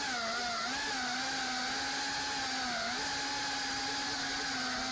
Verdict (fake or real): real